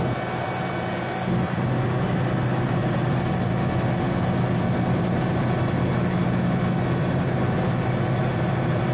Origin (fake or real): real